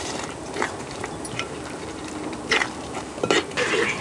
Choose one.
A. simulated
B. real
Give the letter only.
A